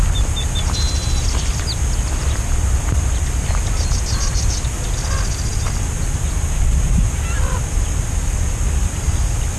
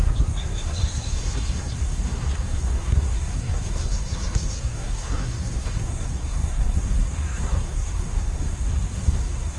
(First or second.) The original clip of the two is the first